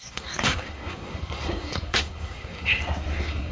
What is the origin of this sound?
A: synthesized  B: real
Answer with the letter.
A